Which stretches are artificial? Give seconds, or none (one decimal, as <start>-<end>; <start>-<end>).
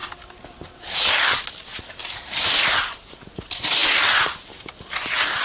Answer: none